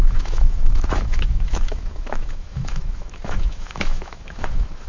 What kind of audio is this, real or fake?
fake